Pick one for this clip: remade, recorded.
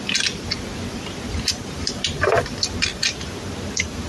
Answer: recorded